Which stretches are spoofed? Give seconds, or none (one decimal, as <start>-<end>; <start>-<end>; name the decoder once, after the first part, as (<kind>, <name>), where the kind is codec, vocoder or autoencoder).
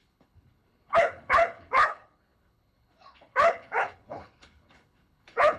0.0-5.6 (codec, HILCodec)